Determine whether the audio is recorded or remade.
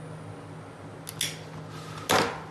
recorded